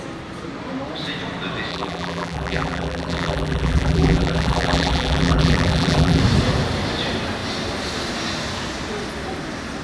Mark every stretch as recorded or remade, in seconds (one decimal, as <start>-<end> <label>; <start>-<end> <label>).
0.0-1.7 recorded; 1.7-6.2 remade; 6.2-9.8 recorded